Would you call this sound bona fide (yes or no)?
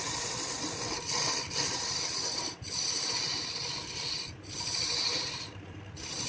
yes